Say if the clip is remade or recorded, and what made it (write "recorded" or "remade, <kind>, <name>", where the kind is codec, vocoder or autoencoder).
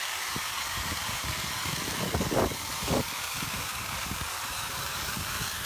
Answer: remade, codec, DAC